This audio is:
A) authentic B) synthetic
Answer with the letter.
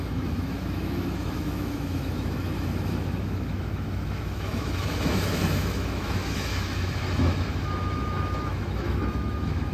B